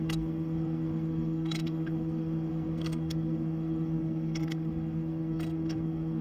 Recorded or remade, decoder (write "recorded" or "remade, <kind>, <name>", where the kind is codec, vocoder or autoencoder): remade, codec, SNAC